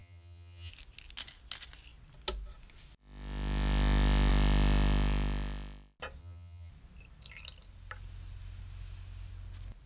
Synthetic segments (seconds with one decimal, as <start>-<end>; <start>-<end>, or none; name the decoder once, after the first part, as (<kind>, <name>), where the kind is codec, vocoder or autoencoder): 0.0-0.7 (vocoder, HiFi-GAN); 6.2-6.7